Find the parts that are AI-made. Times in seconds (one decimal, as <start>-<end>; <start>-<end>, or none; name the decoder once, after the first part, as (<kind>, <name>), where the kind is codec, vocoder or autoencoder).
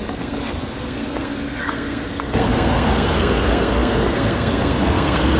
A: 0.0-5.4 (codec, SNAC)